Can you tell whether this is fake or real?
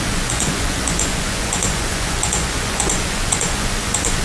fake